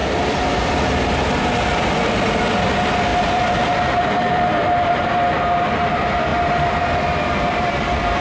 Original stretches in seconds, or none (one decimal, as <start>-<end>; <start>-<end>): 0.7-3.1; 4.9-6.3